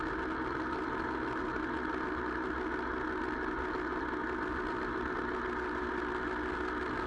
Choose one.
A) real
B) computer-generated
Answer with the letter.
A